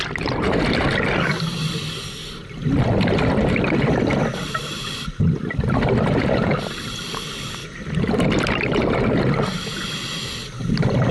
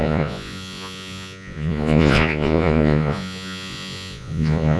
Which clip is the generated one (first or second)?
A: second